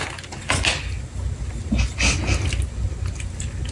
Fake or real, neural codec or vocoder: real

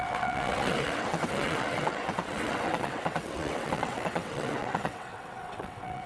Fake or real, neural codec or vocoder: fake, vocoder, WaveNeXt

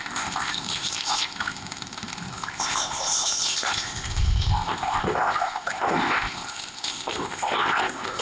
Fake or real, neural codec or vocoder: fake, codec, ZipCodec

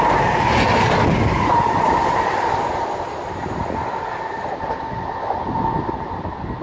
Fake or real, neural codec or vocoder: real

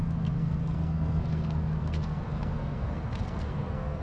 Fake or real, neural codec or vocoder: fake, codec, SNAC